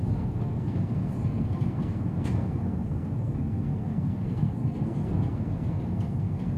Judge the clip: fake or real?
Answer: fake